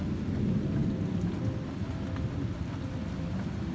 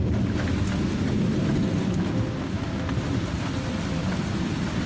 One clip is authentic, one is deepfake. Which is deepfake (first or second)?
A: second